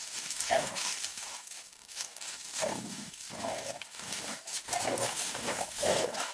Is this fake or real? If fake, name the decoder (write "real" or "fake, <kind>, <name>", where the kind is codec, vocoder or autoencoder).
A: fake, codec, DAC